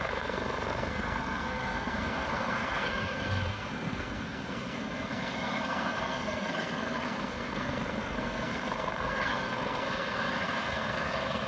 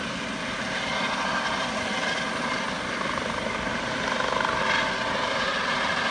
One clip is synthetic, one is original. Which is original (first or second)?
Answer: second